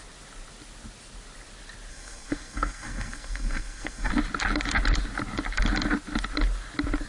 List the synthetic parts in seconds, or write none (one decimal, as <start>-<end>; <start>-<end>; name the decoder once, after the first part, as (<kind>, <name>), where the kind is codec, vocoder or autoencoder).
1.9-4.1 (codec, SNAC)